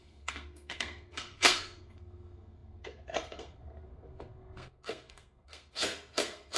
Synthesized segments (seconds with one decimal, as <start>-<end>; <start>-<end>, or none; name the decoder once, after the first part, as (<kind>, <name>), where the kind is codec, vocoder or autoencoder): 0.0-6.6 (codec, SNAC)